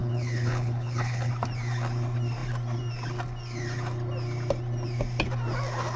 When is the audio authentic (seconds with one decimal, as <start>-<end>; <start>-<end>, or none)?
1.3-6.0

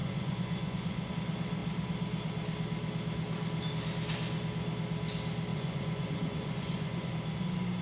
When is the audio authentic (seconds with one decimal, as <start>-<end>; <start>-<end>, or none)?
1.1-5.5; 7.1-7.8

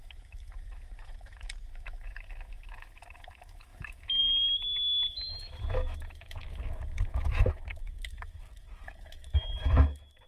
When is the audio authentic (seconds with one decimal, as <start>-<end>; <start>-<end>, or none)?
none

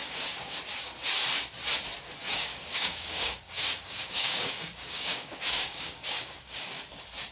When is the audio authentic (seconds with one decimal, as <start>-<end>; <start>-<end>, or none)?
0.6-2.3; 6.6-7.3